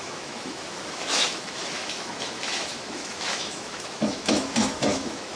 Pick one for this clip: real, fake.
fake